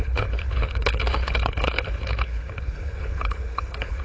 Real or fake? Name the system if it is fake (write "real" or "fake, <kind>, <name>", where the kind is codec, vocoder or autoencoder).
fake, codec, HILCodec